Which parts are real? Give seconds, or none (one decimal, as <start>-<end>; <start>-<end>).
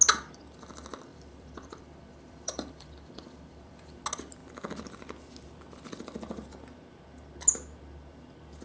0.0-1.1; 3.9-8.6